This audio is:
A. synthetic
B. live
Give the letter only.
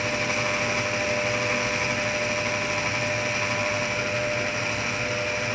B